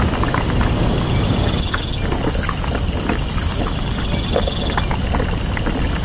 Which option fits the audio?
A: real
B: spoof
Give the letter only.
A